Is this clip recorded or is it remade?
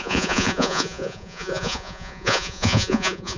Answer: remade